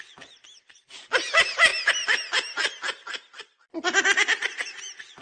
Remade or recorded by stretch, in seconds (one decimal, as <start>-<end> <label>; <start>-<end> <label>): 0.0-5.2 recorded